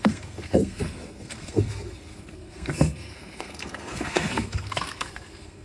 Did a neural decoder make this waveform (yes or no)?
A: yes